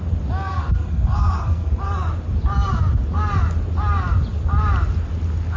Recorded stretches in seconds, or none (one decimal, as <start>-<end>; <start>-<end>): 0.0-0.5; 1.7-5.6